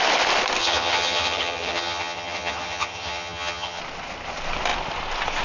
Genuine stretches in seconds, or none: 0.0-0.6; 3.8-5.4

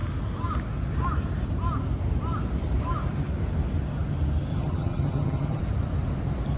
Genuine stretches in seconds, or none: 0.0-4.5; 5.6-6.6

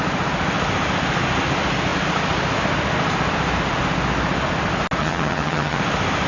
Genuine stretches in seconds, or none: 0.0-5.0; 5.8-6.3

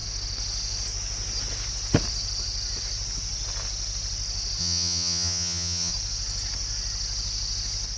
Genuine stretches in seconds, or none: 0.0-4.6; 5.9-8.0

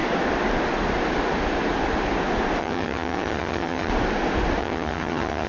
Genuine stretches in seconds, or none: 0.0-2.6; 3.9-4.6

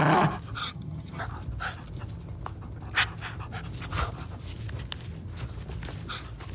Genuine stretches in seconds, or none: 0.0-0.6; 1.2-6.5

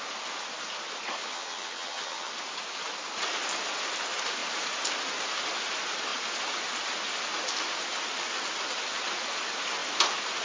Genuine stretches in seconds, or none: 0.0-1.2; 2.3-10.4